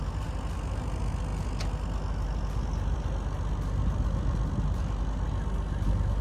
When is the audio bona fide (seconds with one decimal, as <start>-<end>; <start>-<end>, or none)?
0.0-6.2